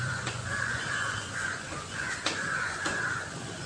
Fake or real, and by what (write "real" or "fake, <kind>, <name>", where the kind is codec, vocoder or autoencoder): fake, vocoder, Vocos